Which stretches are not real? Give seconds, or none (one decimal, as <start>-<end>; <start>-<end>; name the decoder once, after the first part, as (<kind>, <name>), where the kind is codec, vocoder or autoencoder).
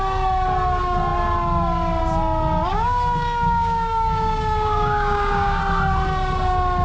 2.7-5.6 (codec, DAC)